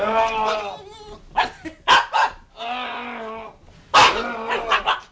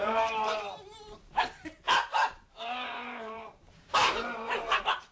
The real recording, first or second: first